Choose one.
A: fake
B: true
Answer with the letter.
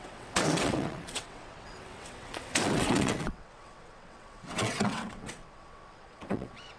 A